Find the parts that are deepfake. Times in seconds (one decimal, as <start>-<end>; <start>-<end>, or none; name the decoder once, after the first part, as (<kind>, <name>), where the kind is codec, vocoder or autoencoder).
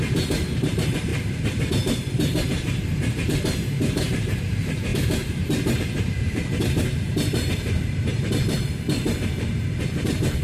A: 0.0-1.1 (vocoder, BigVGAN v2); 1.7-10.4